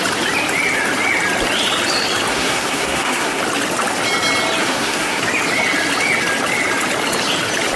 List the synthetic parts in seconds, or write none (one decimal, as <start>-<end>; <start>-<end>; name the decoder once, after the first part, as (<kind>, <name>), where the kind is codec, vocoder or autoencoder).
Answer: 2.3-3.4 (codec, SNAC); 4.6-5.2

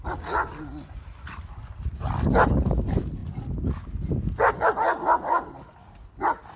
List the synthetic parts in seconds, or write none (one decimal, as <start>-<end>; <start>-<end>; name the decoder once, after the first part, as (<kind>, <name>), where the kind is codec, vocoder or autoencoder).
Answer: none

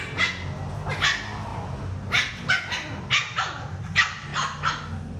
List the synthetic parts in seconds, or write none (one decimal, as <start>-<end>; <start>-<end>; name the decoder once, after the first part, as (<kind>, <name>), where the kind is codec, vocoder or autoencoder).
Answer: none

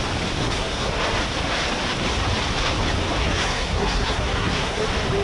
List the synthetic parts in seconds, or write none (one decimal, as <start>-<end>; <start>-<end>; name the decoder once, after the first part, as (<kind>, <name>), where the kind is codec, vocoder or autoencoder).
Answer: 0.4-0.9 (codec, SNAC); 3.2-4.8

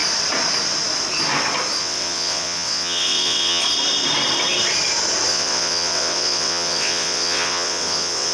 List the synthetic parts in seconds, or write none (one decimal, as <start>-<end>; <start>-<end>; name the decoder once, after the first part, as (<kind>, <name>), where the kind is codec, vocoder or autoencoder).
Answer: 1.8-3.6 (vocoder, WaveNeXt); 5.3-8.3

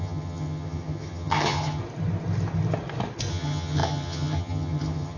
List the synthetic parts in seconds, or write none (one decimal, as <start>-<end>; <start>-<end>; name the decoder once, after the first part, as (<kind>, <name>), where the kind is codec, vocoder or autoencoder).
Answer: 0.0-1.8 (vocoder, HiFi-GAN); 3.3-5.2